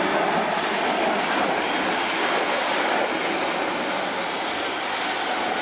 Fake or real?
real